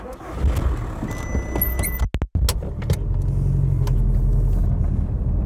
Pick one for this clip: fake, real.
real